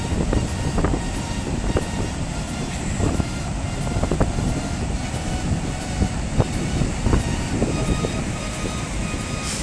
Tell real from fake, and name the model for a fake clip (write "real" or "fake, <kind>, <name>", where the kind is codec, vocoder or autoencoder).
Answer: real